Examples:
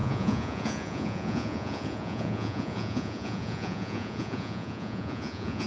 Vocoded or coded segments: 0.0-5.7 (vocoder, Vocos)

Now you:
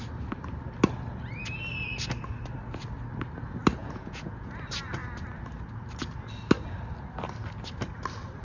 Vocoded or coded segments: 3.8-4.6 (vocoder, Vocos)

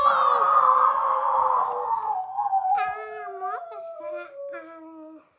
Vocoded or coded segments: none

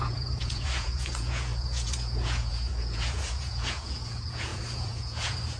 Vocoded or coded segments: 0.0-5.6 (vocoder, Vocos)